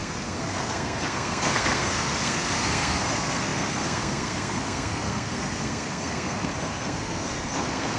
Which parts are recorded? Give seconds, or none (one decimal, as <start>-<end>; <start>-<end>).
none